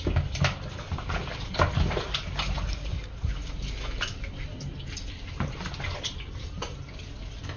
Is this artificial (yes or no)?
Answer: no